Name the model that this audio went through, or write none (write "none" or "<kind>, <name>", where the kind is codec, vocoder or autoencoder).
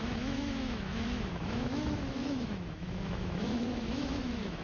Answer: autoencoder, DAC-VAE